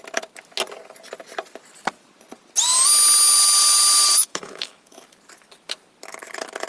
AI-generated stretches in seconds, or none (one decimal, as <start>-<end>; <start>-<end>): 4.2-5.0